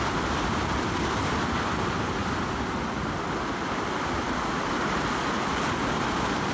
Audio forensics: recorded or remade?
recorded